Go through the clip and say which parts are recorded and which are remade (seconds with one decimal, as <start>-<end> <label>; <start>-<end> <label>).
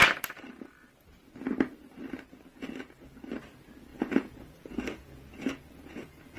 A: 0.0-3.9 recorded; 3.9-6.4 remade